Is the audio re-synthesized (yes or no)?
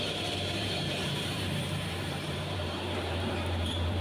yes